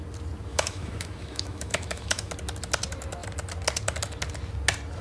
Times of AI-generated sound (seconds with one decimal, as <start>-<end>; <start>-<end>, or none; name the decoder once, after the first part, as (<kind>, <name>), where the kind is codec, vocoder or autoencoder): 0.5-2.3 (autoencoder, DAC-VAE)